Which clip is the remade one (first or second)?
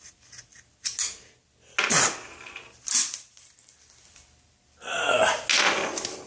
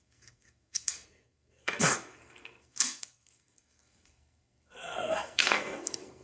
second